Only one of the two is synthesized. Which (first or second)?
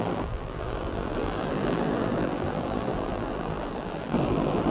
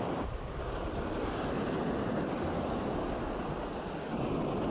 first